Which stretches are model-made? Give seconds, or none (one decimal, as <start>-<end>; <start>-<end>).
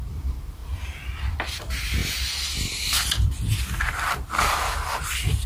0.0-0.6; 1.4-2.0; 4.5-5.5